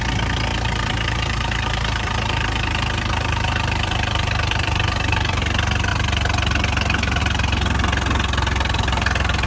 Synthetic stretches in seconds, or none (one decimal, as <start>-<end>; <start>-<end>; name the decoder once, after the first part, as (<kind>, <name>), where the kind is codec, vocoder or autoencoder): 0.5-5.4 (vocoder, BigVGAN v2)